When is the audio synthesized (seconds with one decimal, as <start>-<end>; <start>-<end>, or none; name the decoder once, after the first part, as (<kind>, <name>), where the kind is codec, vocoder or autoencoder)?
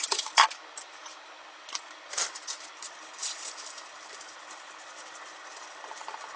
none